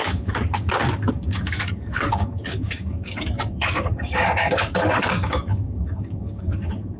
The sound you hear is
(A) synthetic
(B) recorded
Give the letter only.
A